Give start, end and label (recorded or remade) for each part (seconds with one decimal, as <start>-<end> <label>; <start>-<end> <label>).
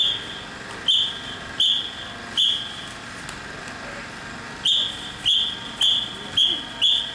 0.0-7.1 recorded